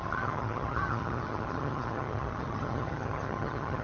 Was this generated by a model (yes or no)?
yes